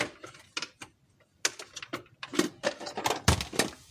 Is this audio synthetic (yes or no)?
no